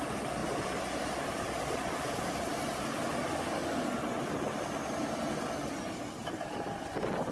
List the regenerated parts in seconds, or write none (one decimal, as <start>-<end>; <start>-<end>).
none